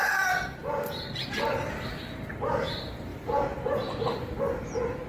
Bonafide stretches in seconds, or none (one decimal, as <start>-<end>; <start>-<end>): 0.0-0.6; 1.1-3.1; 4.4-5.1

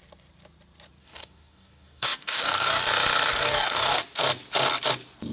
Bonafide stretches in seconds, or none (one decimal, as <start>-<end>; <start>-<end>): 0.0-1.0; 2.9-3.3; 4.0-5.3

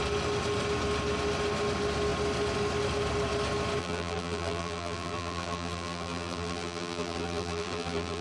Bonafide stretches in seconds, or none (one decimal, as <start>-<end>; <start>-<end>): 0.0-3.8

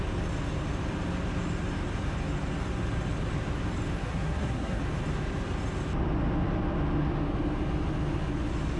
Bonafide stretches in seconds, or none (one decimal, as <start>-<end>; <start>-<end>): 0.0-4.0; 4.8-8.8

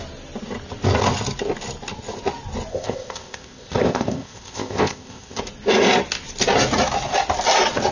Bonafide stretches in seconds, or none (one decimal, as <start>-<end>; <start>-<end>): 0.0-2.7; 5.4-7.9